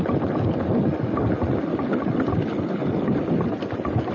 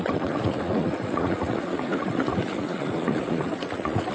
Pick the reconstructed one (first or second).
second